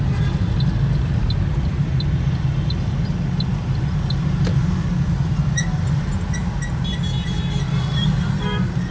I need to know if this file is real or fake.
real